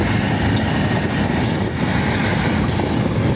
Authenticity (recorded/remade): recorded